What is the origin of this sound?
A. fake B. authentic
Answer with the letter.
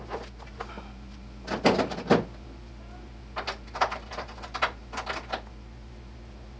B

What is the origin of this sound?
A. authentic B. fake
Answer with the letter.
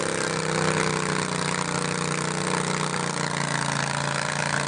A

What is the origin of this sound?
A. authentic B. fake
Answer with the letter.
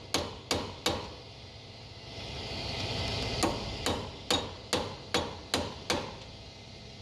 A